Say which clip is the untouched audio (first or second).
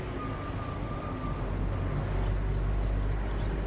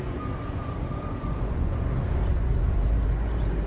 first